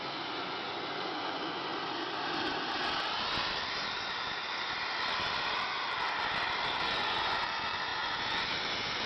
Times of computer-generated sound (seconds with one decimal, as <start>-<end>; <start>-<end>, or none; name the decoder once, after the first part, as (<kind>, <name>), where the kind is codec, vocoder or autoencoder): 0.0-1.7 (vocoder, Vocos); 6.8-9.1